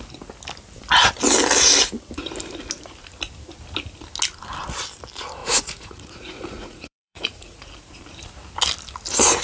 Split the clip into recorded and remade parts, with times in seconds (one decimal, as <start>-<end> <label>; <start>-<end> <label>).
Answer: 0.0-5.4 recorded; 5.4-7.7 remade; 7.7-9.4 recorded